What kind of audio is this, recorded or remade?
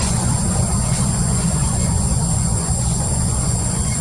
remade